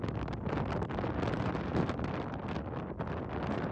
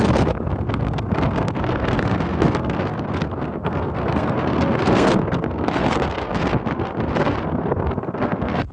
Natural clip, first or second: first